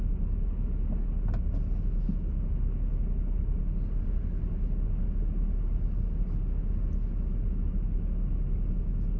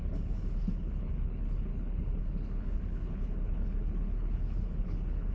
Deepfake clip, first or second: second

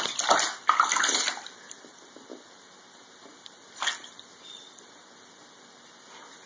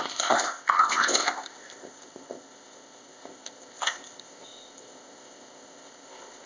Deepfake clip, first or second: second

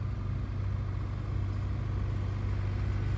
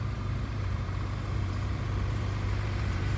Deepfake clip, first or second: second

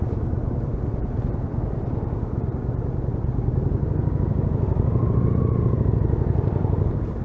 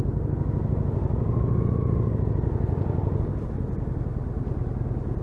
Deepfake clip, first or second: first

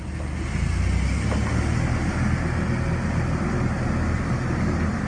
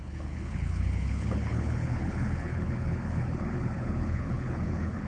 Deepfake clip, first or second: second